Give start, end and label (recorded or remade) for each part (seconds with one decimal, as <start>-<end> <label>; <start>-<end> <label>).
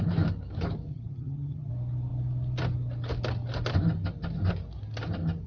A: 0.0-0.9 recorded; 0.9-1.7 remade; 1.7-5.5 recorded